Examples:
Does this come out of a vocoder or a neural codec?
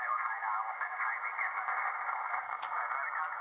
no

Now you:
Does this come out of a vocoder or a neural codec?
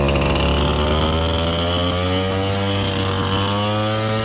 no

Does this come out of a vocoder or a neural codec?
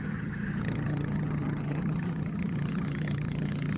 yes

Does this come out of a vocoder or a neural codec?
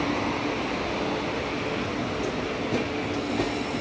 no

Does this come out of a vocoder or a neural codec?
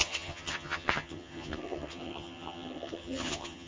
yes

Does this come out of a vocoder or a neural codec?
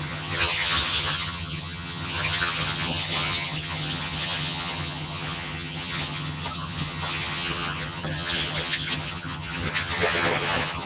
yes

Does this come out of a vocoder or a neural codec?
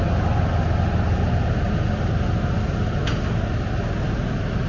no